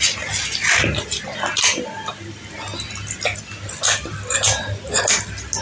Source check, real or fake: real